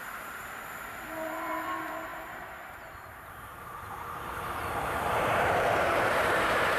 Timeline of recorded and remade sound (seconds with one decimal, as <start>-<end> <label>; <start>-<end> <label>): 0.0-6.8 remade